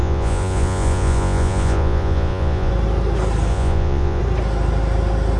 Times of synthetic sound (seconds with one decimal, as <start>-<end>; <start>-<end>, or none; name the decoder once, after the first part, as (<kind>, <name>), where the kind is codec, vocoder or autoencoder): 0.0-2.7 (vocoder, Vocos); 3.5-4.2

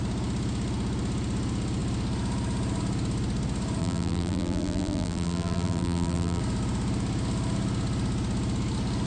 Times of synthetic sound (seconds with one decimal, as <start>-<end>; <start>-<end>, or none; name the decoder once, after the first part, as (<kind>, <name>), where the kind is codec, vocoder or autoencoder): 3.8-6.4 (vocoder, BigVGAN v2)

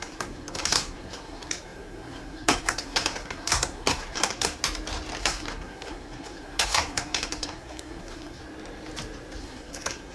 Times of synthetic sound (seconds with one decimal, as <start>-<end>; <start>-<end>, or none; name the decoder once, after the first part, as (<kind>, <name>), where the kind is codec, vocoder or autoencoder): 0.0-4.6 (codec, SNAC); 5.2-8.4; 9.4-10.1